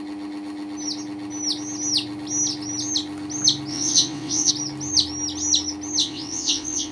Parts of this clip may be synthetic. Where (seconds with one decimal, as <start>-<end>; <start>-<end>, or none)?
3.7-4.5; 6.0-6.9